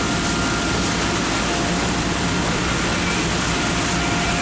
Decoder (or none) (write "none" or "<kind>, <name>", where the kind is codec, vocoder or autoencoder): none